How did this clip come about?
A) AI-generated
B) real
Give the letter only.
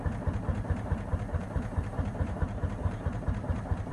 A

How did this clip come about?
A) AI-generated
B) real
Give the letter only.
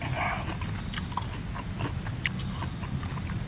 B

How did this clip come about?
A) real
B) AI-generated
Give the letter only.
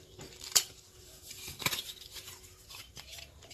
B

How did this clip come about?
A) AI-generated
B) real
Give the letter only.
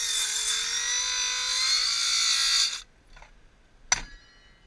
B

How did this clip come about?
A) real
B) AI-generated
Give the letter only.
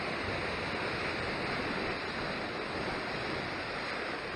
A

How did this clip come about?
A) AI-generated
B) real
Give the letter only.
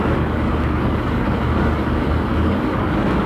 A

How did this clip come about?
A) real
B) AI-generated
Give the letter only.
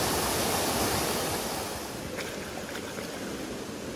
A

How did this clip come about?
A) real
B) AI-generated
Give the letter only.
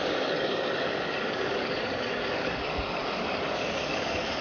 B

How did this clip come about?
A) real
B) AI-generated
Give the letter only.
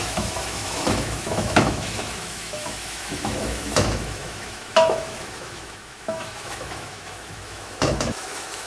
B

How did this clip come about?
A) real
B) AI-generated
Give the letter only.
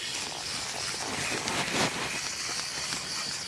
A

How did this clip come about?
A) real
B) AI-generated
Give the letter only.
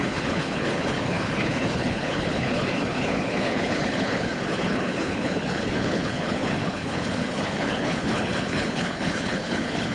B